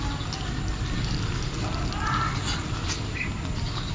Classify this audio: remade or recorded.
recorded